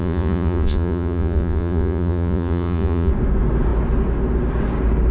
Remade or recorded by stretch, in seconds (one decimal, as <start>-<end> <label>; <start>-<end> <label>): 0.0-3.1 remade; 3.1-5.1 recorded